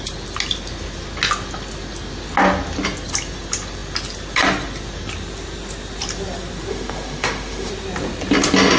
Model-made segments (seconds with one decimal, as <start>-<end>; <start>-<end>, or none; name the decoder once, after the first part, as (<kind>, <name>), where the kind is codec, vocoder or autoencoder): 6.7-7.7 (autoencoder, DAC-VAE)